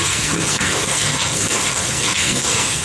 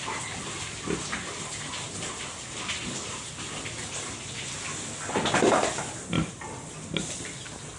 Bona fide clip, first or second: second